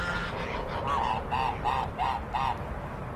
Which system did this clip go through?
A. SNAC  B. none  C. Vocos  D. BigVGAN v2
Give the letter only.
B